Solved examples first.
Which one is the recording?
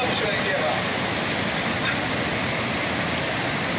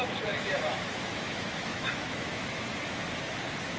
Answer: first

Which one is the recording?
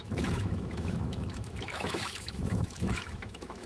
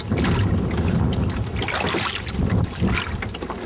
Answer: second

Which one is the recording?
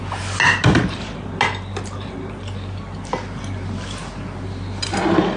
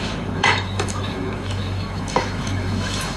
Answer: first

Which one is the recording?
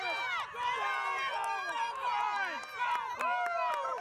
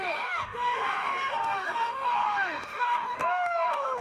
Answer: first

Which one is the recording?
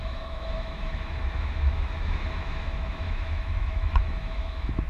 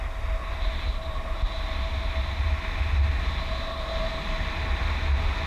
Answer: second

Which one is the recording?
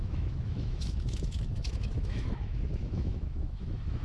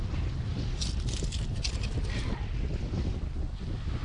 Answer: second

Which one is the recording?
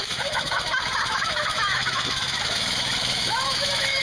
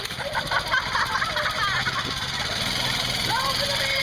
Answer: second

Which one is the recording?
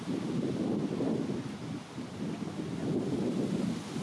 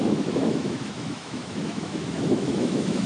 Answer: first